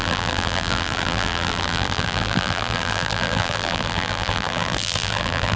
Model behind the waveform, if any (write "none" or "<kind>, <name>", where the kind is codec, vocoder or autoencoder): vocoder, BigVGAN v2